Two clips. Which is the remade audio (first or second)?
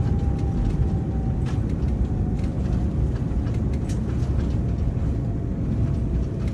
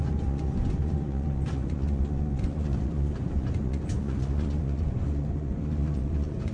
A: second